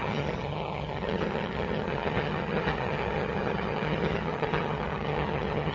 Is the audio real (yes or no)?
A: no